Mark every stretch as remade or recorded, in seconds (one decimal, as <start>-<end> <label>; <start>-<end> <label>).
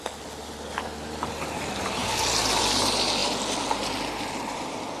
0.0-5.0 recorded